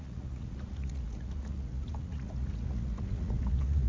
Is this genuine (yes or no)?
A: no